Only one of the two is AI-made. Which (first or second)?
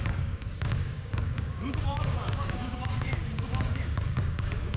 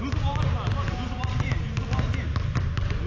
first